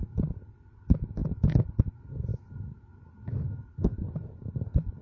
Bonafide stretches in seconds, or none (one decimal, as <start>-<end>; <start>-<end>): 0.0-5.0